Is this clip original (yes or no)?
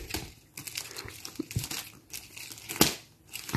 yes